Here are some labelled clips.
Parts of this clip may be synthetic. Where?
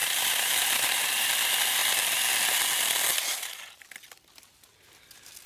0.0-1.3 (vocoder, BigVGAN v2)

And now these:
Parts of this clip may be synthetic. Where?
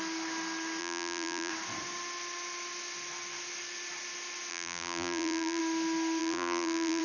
0.8-1.5 (vocoder, BigVGAN v2); 4.5-5.6; 6.2-7.0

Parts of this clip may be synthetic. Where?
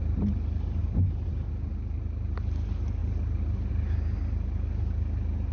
none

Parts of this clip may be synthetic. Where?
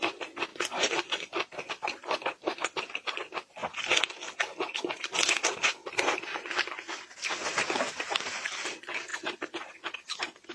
0.0-3.6 (vocoder, BigVGAN v2); 7.9-10.5